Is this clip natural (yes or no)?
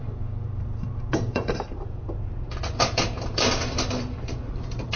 no